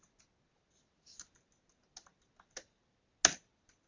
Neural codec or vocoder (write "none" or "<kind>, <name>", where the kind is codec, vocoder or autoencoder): none